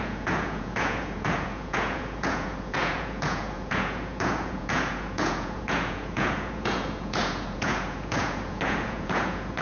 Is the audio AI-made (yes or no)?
yes